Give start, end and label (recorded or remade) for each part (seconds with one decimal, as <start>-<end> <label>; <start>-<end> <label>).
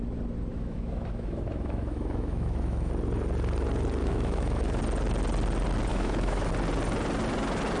0.0-0.5 recorded; 0.5-2.9 remade; 2.9-4.0 recorded; 4.0-4.8 remade; 4.8-5.9 recorded; 5.9-6.5 remade; 6.5-7.8 recorded